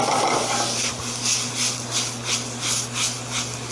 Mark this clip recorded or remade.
recorded